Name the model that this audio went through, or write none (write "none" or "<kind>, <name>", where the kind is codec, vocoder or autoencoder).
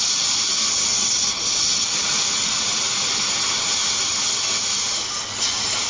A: none